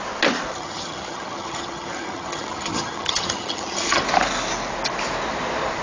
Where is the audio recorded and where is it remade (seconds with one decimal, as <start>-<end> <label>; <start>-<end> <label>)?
0.0-0.5 recorded; 0.5-4.0 remade; 4.0-5.8 recorded